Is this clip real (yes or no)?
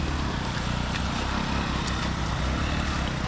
yes